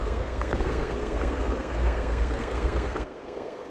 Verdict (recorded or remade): remade